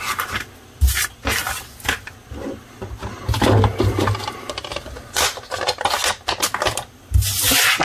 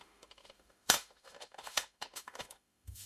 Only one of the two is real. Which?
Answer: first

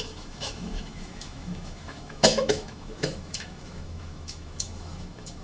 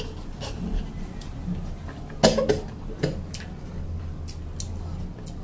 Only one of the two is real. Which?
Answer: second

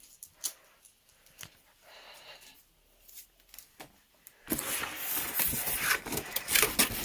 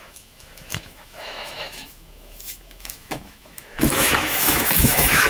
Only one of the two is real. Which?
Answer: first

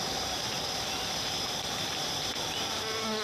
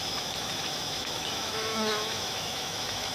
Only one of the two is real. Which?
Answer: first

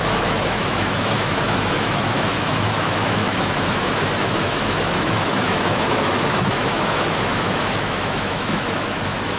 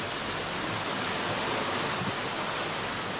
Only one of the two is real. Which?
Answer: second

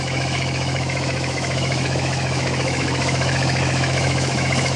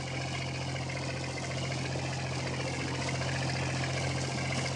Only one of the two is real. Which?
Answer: second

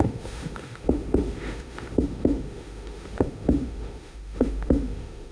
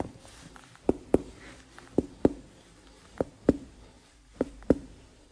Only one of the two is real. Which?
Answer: second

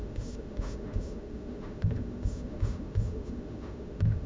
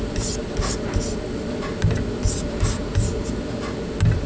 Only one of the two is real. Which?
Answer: second